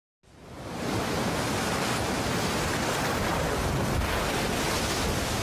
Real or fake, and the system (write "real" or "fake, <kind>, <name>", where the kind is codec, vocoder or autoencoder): real